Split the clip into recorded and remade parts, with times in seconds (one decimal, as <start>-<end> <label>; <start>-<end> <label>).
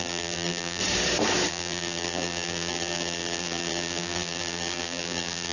0.0-0.8 remade; 0.8-1.5 recorded; 1.5-5.5 remade